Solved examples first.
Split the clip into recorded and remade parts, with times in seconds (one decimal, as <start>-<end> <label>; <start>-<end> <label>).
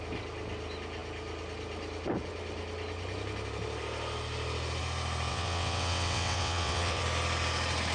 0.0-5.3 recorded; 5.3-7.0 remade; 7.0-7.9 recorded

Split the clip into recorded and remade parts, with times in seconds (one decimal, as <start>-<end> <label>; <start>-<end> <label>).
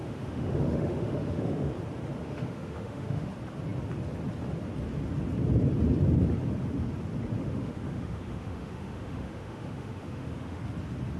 0.0-1.7 remade; 1.7-2.2 recorded; 2.2-3.3 remade; 3.3-7.4 recorded; 7.4-10.6 remade; 10.6-11.2 recorded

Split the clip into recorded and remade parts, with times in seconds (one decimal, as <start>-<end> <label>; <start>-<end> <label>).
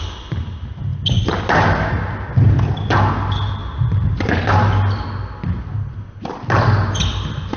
0.0-0.9 recorded; 0.9-1.9 remade; 1.9-3.6 recorded; 3.6-4.3 remade; 4.3-7.6 recorded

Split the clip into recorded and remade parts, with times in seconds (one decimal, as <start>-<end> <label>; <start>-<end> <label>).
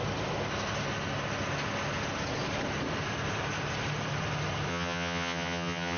0.0-4.7 recorded; 4.7-6.0 remade